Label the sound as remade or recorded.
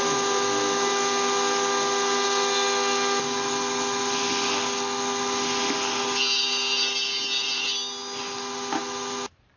recorded